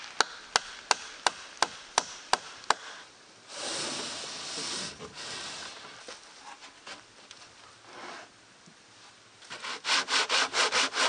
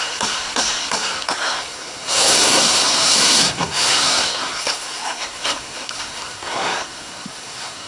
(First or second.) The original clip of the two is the first